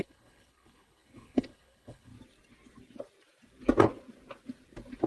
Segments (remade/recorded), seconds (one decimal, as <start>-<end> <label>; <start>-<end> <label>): 0.0-2.1 remade; 2.1-5.1 recorded